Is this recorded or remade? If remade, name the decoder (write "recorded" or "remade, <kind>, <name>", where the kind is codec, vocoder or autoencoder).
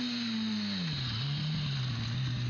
recorded